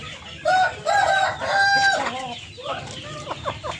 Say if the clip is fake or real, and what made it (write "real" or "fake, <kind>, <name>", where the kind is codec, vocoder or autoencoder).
real